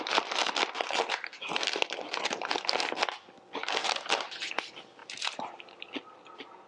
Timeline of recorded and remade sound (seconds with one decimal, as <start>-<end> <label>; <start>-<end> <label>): 0.0-6.7 recorded